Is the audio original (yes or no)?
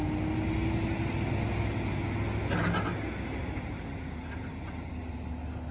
yes